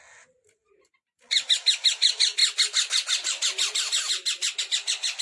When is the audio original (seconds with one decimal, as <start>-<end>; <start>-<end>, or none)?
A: 0.0-5.2